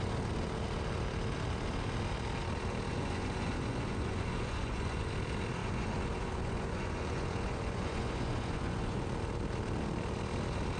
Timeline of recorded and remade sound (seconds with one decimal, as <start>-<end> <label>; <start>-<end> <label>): 0.0-2.9 recorded; 2.9-5.1 remade; 5.1-5.6 recorded; 5.6-9.0 remade; 9.0-10.8 recorded